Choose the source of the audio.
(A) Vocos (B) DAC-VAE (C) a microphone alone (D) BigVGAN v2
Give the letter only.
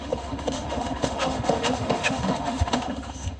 B